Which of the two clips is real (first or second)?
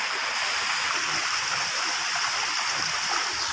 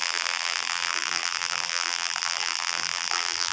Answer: first